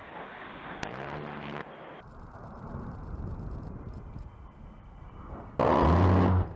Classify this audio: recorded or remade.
recorded